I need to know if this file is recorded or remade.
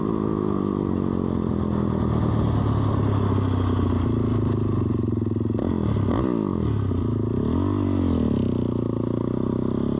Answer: recorded